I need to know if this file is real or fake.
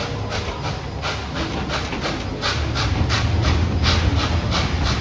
real